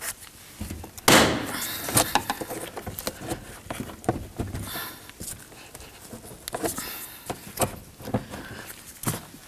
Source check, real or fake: real